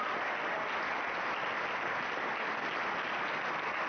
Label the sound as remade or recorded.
recorded